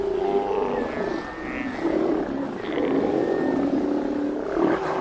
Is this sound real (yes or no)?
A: yes